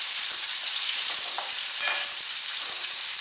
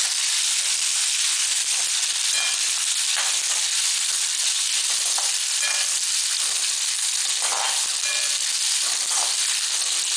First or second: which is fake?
first